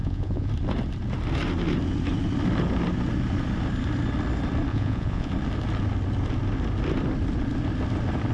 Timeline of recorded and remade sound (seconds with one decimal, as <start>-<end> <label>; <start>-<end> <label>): 0.0-0.5 remade; 0.5-4.7 recorded; 4.7-5.3 remade; 5.3-8.3 recorded